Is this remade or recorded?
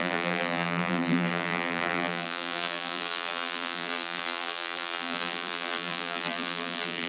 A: remade